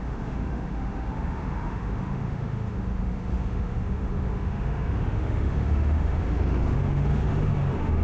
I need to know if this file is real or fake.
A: fake